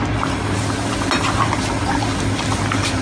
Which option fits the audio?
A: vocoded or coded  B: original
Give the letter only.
B